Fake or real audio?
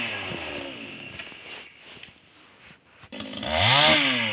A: real